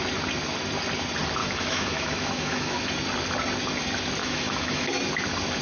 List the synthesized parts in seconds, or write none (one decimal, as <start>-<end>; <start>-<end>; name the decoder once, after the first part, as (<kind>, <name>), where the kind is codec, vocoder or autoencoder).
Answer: 1.4-2.9 (autoencoder, DAC-VAE); 4.2-4.9